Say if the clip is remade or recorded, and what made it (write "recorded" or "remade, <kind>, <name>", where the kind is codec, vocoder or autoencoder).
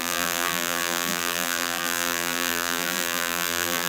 remade, vocoder, BigVGAN v2